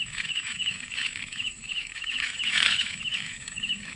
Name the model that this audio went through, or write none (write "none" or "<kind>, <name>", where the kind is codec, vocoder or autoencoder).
autoencoder, DAC-VAE